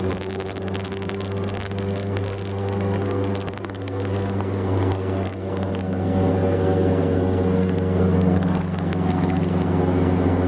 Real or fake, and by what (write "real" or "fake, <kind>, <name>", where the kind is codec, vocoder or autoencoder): fake, codec, SNAC